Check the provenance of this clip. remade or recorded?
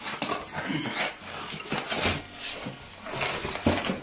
recorded